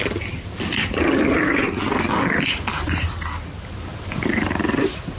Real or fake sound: real